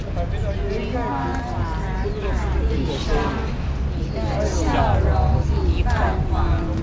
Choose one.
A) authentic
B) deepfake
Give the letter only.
A